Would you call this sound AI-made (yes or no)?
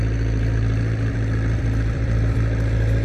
yes